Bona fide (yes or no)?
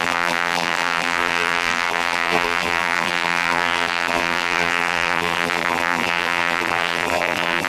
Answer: no